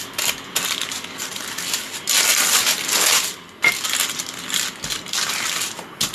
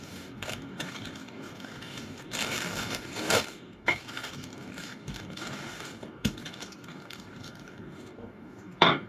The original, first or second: first